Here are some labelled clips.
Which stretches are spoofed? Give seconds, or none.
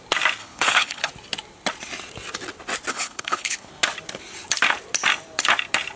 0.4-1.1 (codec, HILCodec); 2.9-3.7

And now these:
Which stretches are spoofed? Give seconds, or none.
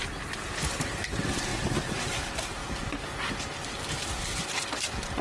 1.5-4.3 (vocoder, BigVGAN v2)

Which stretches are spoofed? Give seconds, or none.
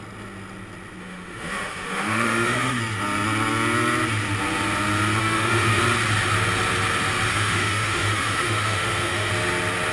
1.0-2.8 (autoencoder, DAC-VAE); 5.2-5.8; 7.3-9.3